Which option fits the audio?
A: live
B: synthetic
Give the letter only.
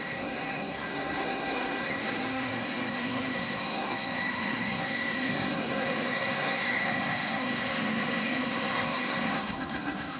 B